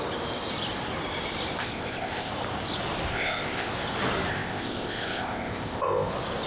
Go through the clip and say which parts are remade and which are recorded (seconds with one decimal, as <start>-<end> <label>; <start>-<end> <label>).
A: 0.0-1.6 recorded; 1.6-2.3 remade; 2.3-3.1 recorded; 3.1-3.7 remade; 3.7-4.3 recorded; 4.3-6.1 remade; 6.1-6.5 recorded